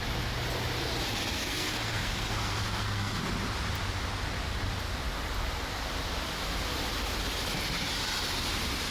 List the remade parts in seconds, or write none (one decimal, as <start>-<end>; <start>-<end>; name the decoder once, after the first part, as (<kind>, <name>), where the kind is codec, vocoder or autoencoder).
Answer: 1.3-3.2 (codec, SNAC)